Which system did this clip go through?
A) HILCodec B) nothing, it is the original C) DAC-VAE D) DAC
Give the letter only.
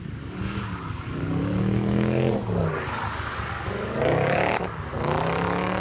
D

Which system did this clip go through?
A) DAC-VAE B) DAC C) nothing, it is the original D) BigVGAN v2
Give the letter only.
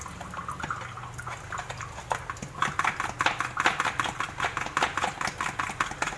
C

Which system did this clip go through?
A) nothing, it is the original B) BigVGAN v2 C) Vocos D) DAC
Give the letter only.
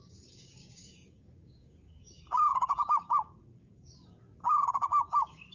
D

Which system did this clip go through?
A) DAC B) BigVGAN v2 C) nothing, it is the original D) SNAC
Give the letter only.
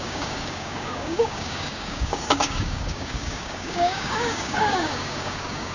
A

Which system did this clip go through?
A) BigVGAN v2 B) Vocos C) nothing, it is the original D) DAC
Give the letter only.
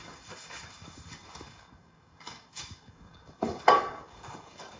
D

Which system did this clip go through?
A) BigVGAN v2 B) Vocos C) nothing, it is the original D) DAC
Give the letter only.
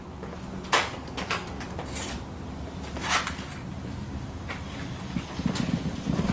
C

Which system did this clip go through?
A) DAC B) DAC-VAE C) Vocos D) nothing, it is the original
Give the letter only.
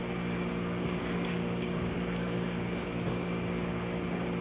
A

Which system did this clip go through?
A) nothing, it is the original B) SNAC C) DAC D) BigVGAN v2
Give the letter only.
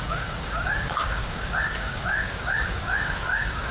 C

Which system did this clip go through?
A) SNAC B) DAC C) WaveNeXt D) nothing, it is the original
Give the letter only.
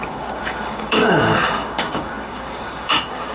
B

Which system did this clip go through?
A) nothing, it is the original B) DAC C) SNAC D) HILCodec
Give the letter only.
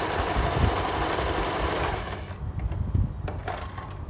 A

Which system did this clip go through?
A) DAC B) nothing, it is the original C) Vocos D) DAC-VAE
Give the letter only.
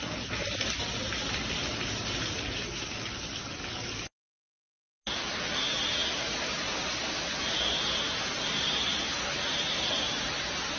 B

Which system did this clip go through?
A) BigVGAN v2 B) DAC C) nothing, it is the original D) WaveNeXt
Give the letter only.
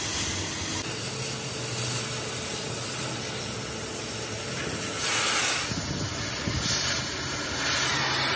C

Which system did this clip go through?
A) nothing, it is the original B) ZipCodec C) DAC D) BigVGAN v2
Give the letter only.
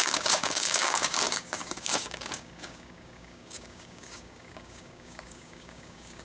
C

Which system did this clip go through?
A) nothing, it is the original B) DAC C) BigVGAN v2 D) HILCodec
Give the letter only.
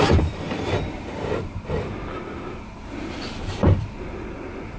A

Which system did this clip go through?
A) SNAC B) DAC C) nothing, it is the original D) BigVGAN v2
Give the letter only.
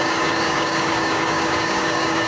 B